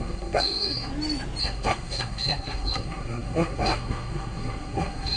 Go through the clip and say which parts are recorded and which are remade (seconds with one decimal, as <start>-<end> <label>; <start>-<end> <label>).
0.0-0.9 remade; 0.9-1.4 recorded; 1.4-5.2 remade